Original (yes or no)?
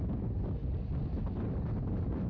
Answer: yes